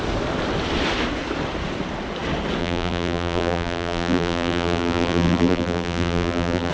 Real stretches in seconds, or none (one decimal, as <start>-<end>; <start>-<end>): 0.0-2.6